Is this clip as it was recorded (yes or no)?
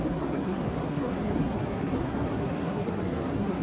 no